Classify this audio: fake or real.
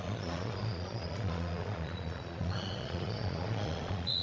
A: fake